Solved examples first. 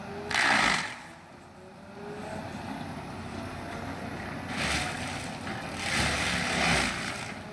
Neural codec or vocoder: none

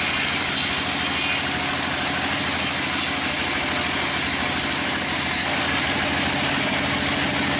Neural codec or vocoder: none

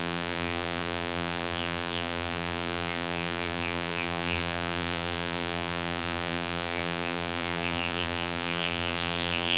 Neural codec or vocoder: vocoder, BigVGAN v2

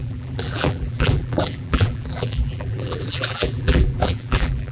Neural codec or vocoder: vocoder, BigVGAN v2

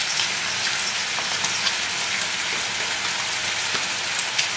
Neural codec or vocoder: none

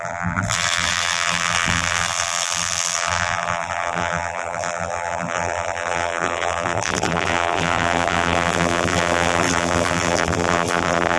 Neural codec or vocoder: vocoder, BigVGAN v2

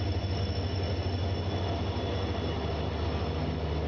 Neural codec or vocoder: none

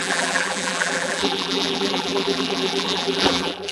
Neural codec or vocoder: vocoder, BigVGAN v2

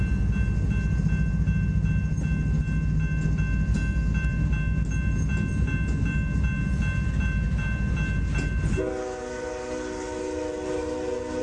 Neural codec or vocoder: none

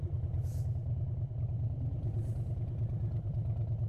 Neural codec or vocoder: none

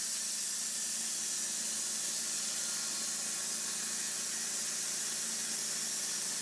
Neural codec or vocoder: none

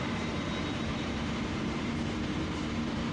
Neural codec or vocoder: vocoder, BigVGAN v2